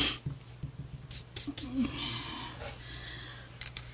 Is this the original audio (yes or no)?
yes